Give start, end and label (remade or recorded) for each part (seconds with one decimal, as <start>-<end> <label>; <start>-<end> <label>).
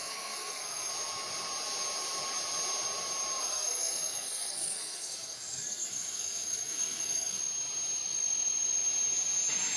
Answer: 0.0-0.9 remade; 0.9-3.4 recorded; 3.4-7.4 remade; 7.4-9.8 recorded